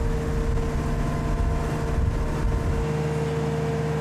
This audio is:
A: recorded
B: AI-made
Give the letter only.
A